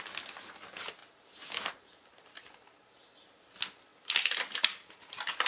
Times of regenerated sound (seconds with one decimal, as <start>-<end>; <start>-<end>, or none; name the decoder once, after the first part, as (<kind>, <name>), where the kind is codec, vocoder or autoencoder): 3.9-5.5 (vocoder, BigVGAN v2)

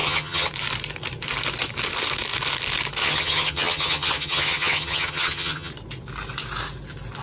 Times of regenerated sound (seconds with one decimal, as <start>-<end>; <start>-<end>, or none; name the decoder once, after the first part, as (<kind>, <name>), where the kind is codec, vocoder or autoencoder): 0.0-0.5 (vocoder, HiFi-GAN); 3.0-5.7

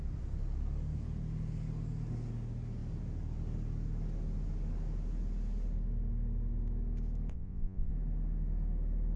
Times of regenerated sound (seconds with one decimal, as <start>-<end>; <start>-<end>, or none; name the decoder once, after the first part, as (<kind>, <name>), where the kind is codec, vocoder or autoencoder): 7.3-7.9 (vocoder, Vocos)

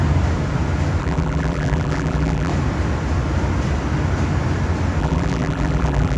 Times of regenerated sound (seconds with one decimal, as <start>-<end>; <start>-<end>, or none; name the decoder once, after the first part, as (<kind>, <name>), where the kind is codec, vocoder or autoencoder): 1.0-2.5 (vocoder, BigVGAN v2); 5.0-6.2

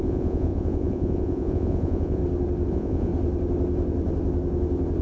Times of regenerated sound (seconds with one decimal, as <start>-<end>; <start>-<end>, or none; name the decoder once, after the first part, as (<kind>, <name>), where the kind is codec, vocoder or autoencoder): 0.0-2.2 (vocoder, Vocos); 2.7-3.1

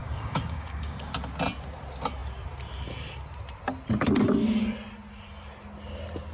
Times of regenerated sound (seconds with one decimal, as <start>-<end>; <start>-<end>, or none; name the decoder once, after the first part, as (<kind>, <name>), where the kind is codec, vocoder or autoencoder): 0.0-1.0 (codec, DAC)

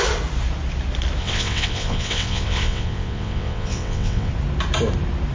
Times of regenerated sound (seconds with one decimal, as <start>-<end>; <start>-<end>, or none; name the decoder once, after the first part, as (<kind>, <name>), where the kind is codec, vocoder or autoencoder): 1.2-4.3 (vocoder, WaveNeXt)

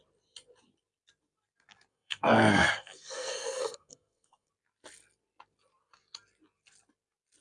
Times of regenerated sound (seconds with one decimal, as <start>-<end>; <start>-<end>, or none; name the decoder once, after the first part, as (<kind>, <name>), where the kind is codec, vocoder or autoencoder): 1.9-4.5 (codec, SNAC)